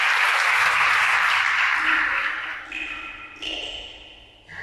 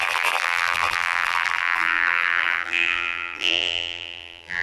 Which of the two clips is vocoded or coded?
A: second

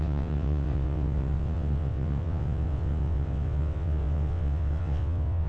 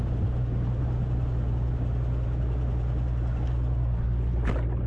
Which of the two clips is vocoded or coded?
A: first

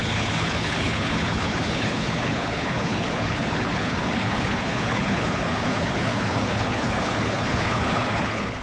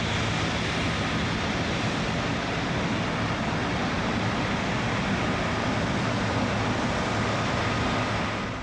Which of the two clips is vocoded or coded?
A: first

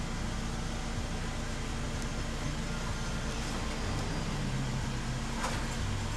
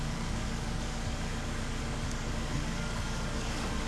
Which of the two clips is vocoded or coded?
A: second